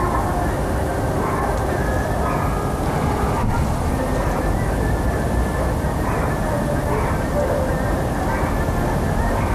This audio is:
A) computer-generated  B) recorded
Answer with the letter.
B